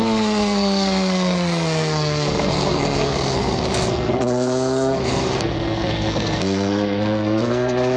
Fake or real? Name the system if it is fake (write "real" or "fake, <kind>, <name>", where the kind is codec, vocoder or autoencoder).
fake, codec, SNAC